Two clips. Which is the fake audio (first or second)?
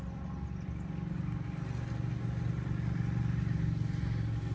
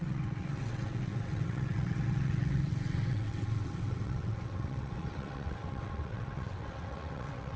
second